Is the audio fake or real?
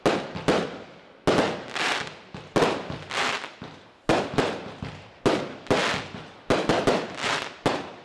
real